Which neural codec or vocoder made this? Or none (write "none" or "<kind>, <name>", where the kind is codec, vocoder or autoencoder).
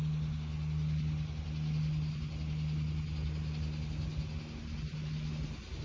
none